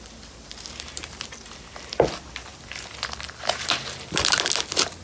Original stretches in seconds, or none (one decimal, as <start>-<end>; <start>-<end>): 0.0-5.0